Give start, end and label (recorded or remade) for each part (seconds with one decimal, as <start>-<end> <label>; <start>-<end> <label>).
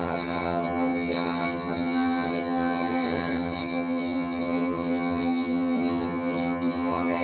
0.0-7.2 remade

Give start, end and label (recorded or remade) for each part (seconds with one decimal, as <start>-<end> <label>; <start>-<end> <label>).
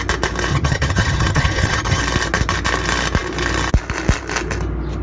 0.0-0.5 recorded; 0.5-2.0 remade; 2.0-5.0 recorded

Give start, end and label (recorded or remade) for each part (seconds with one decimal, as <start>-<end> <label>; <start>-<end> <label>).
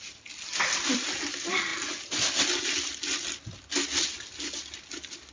0.0-5.3 recorded